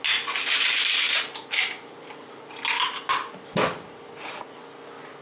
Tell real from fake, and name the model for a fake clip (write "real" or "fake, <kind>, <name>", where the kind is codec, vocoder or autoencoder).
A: real